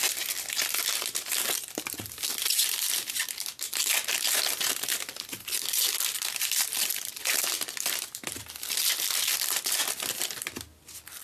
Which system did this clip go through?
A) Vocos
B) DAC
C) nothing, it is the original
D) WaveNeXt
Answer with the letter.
C